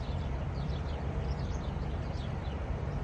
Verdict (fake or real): fake